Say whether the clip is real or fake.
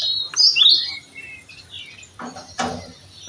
real